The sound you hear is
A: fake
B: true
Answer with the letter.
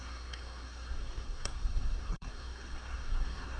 A